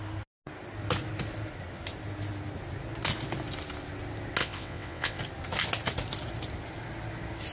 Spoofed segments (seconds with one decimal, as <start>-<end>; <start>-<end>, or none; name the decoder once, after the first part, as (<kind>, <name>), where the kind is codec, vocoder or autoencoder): 4.4-5.2 (vocoder, WaveNeXt)